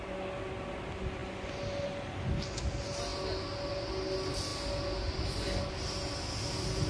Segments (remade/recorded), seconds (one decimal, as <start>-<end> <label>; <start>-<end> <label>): 0.0-6.9 recorded